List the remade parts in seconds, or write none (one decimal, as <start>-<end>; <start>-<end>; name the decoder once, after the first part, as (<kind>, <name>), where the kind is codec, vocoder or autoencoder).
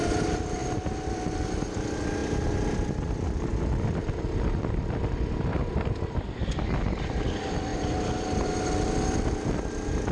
4.0-6.6 (vocoder, BigVGAN v2)